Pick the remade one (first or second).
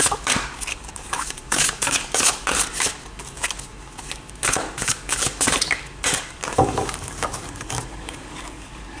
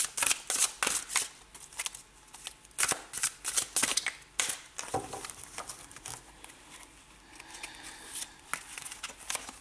first